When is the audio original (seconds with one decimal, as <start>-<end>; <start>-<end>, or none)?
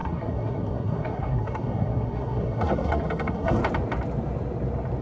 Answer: 3.6-5.0